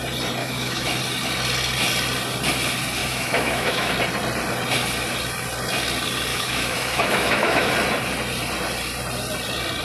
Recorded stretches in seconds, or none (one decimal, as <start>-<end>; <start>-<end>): 0.0-0.4; 1.0-3.0; 3.9-6.3; 7.7-9.8